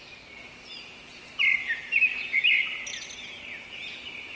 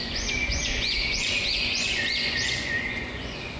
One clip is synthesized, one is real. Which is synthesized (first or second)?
second